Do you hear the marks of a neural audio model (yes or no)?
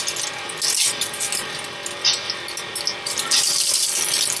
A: no